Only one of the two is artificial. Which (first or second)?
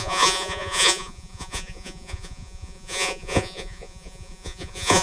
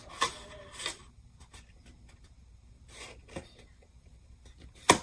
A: first